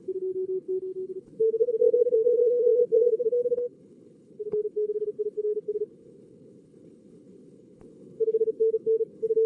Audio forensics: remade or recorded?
remade